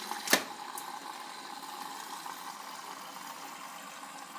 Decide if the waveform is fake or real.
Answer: real